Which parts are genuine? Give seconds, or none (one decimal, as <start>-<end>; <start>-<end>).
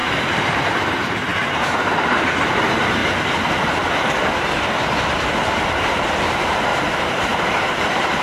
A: 3.0-5.8